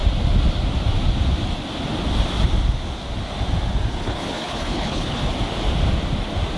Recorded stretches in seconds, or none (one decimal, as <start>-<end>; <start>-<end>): 0.0-4.0; 5.2-6.6